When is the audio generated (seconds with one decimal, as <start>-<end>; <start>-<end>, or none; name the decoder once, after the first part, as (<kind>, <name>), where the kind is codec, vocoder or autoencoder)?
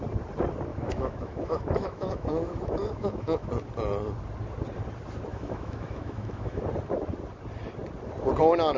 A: 0.7-3.5 (autoencoder, DAC-VAE); 5.3-6.6